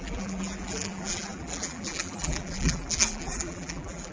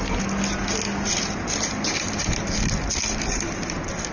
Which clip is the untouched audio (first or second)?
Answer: second